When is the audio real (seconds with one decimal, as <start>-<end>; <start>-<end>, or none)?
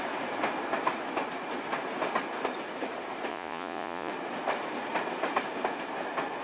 0.0-3.3; 4.1-6.4